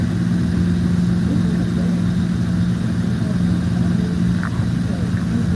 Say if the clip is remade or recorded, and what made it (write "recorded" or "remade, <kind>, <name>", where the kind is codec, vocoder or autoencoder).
recorded